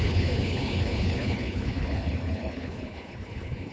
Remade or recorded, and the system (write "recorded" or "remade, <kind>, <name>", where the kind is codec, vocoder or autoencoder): remade, codec, HILCodec